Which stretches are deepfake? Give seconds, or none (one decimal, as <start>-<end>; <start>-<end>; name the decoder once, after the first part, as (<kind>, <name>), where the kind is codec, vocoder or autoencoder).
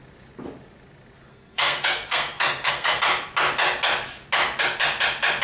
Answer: 1.3-3.0 (codec, SNAC)